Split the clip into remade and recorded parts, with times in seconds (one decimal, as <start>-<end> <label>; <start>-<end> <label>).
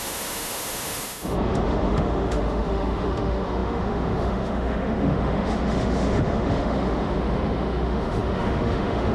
0.0-9.1 remade